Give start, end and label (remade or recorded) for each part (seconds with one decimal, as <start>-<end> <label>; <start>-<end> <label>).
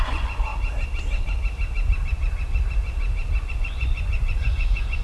0.0-0.5 remade; 0.5-3.5 recorded; 3.5-5.0 remade